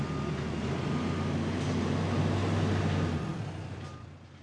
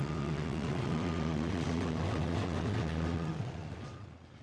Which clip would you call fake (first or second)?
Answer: second